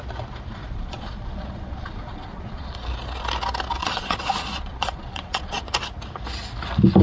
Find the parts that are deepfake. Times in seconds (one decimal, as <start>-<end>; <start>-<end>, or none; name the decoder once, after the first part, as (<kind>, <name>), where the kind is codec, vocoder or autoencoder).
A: 0.5-2.7 (vocoder, Vocos); 3.8-5.6